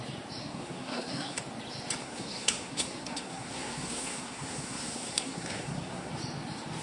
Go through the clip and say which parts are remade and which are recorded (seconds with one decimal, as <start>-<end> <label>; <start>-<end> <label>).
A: 0.0-0.4 recorded; 0.4-1.4 remade; 1.4-2.0 recorded; 2.0-6.1 remade; 6.1-6.8 recorded